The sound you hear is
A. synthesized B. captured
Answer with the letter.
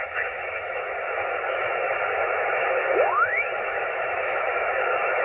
A